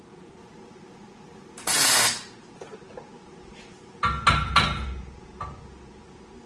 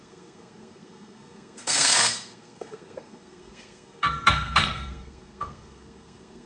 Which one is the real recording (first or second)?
first